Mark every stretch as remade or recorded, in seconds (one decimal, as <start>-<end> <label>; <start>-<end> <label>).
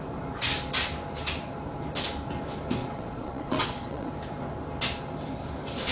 0.0-2.8 recorded; 2.8-4.1 remade; 4.1-5.9 recorded